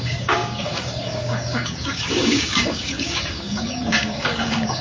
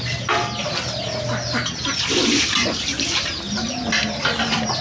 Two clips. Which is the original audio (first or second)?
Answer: second